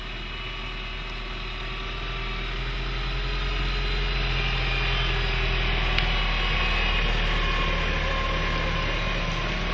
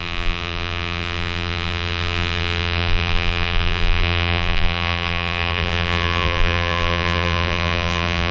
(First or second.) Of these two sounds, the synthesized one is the second